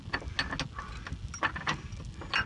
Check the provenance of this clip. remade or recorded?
recorded